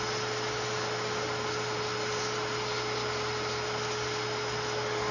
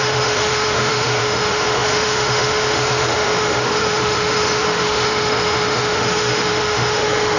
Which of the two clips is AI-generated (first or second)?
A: second